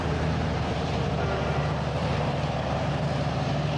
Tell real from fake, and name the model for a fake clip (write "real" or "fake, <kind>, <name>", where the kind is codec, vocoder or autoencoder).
fake, vocoder, BigVGAN v2